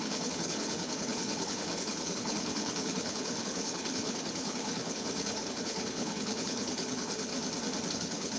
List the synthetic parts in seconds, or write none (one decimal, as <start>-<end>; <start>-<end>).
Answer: 0.0-7.3; 7.9-8.4